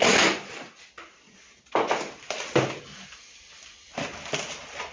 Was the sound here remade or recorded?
recorded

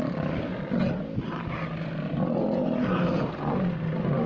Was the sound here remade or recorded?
recorded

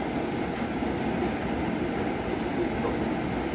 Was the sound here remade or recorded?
recorded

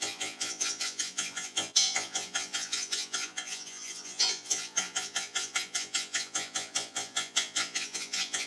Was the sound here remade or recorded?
remade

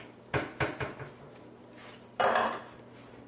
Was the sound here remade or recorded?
recorded